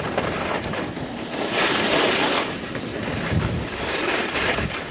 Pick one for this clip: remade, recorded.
recorded